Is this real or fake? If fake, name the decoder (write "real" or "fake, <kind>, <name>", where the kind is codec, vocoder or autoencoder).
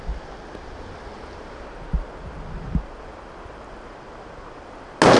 real